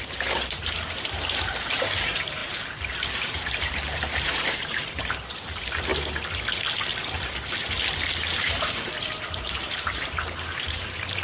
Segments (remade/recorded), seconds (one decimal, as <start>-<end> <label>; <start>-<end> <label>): 0.0-5.9 remade; 5.9-8.0 recorded; 8.0-11.2 remade